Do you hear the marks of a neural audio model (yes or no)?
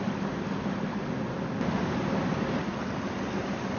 no